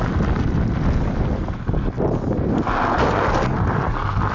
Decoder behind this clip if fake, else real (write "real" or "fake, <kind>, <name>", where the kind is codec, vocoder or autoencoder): real